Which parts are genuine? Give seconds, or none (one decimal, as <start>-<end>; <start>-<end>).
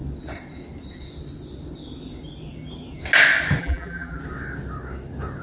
0.0-3.6; 4.2-5.4